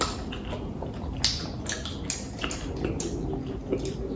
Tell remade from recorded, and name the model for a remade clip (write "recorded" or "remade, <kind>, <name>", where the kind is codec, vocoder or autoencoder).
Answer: recorded